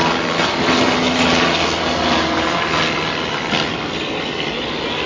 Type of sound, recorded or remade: recorded